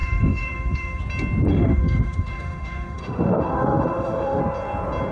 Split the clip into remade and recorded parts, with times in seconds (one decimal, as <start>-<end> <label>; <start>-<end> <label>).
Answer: 0.0-1.0 remade; 1.0-1.5 recorded; 1.5-4.4 remade; 4.4-5.1 recorded